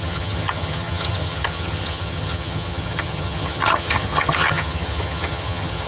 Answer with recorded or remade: remade